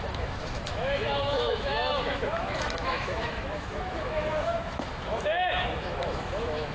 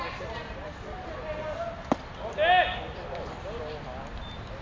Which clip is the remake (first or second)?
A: first